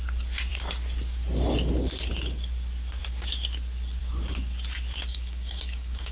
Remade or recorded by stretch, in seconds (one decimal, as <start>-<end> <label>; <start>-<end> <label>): 0.0-5.1 recorded; 5.1-6.1 remade